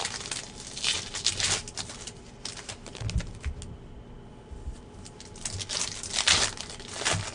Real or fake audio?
real